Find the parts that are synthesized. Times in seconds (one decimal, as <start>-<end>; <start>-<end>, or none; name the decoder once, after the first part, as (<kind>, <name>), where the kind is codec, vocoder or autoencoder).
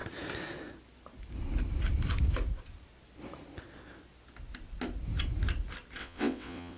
6.0-6.8 (vocoder, WaveNeXt)